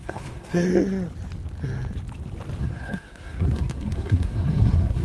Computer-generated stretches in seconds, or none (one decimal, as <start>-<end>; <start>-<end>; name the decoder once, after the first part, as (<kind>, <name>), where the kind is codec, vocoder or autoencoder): 0.0-0.7 (codec, SNAC); 2.6-5.0